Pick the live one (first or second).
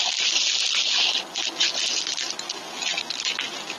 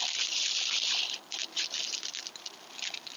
first